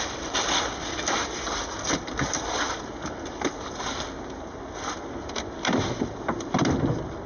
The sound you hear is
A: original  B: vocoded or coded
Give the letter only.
A